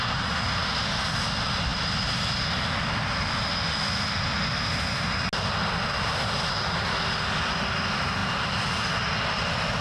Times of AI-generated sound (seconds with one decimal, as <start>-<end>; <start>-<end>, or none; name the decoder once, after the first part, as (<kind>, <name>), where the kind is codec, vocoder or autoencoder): none